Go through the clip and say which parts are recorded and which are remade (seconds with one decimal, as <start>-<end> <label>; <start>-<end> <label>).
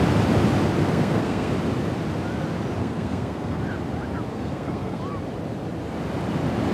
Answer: 0.0-0.8 recorded; 0.8-1.5 remade; 1.5-2.8 recorded; 2.8-3.6 remade; 3.6-4.3 recorded; 4.3-5.0 remade; 5.0-6.7 recorded